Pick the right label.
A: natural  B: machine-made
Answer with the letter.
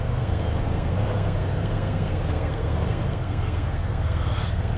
B